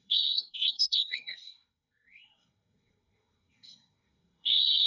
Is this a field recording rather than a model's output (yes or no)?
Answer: no